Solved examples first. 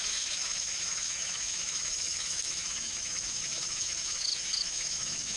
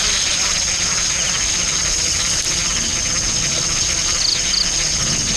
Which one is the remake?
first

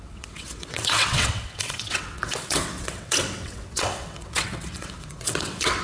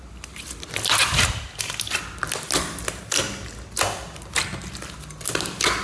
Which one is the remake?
first